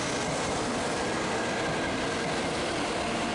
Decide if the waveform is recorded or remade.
recorded